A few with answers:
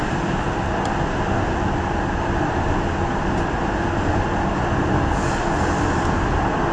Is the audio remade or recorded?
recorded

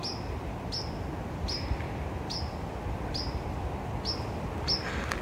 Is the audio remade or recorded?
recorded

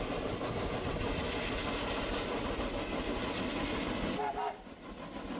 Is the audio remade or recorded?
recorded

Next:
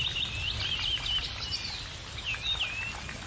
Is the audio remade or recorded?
recorded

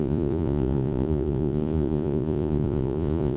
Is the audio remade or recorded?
remade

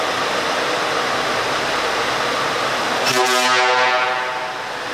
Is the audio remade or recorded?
recorded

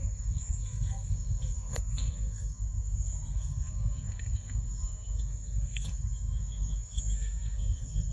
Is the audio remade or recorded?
remade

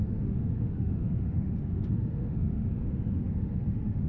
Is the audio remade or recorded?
remade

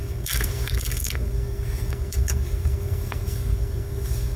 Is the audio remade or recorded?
remade